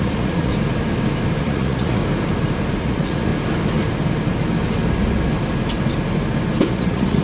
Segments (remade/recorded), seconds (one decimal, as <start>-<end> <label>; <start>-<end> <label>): 0.0-0.5 remade; 0.5-1.4 recorded; 1.4-2.0 remade; 2.0-2.8 recorded; 2.8-3.3 remade; 3.3-6.7 recorded; 6.7-7.2 remade